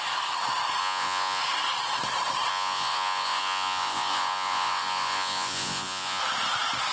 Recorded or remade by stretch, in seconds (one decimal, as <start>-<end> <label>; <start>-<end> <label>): 0.0-0.8 recorded; 0.8-1.4 remade; 1.4-2.5 recorded; 2.5-6.2 remade; 6.2-6.9 recorded